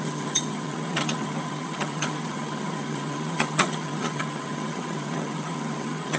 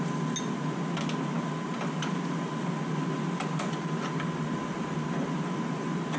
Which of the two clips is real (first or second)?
second